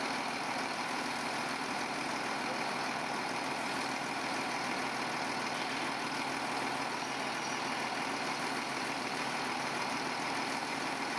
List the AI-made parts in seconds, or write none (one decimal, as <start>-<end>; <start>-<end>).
0.0-4.8; 8.1-11.2